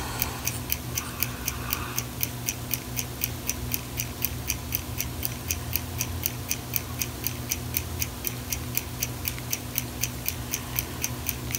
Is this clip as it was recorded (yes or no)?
yes